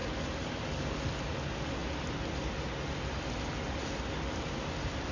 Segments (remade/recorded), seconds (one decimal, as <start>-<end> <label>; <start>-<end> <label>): 0.0-0.7 remade; 0.7-5.1 recorded